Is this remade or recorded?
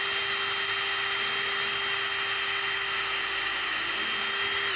recorded